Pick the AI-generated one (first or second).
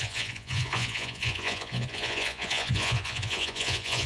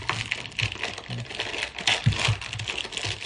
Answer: first